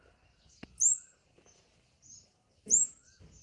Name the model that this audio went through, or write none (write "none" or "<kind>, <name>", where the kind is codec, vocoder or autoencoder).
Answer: none